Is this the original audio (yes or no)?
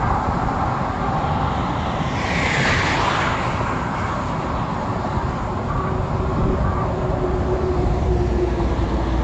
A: yes